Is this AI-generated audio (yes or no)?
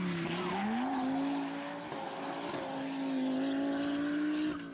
no